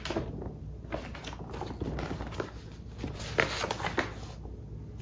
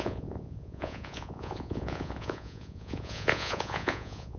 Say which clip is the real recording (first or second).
first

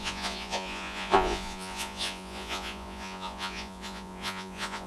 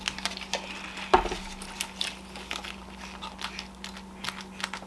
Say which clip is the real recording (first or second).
second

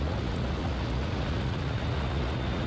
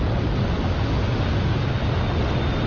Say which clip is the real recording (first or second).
second